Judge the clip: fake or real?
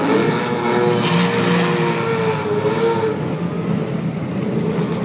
real